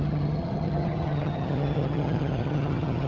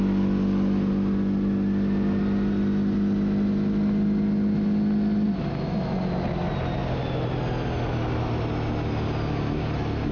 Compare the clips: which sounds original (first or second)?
second